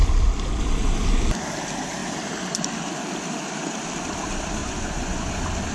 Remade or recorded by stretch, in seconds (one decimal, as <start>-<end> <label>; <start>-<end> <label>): 0.0-4.6 recorded; 4.6-5.3 remade; 5.3-5.7 recorded